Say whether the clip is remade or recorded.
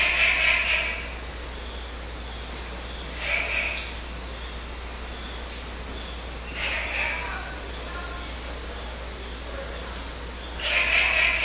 recorded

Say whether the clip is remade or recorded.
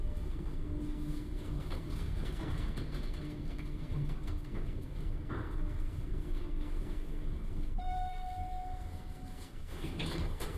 remade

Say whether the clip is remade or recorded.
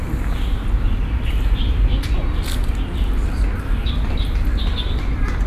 recorded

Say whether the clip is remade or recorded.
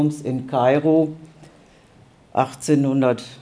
recorded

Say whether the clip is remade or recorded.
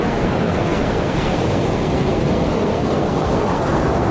remade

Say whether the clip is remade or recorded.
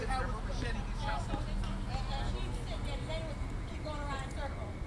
recorded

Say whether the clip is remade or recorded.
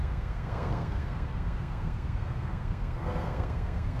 remade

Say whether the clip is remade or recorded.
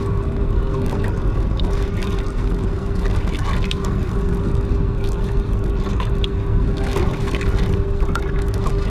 remade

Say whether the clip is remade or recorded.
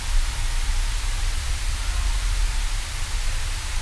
recorded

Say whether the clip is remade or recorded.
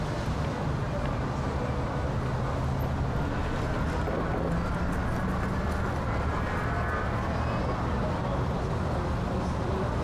recorded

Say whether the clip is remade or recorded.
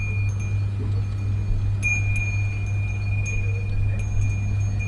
recorded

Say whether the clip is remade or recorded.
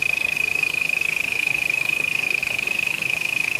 remade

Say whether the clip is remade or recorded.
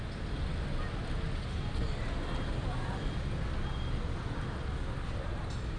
recorded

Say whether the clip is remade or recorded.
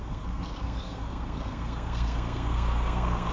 remade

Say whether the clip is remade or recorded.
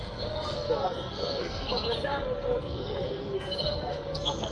remade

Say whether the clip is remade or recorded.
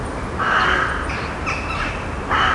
recorded